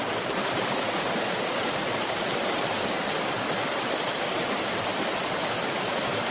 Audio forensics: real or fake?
real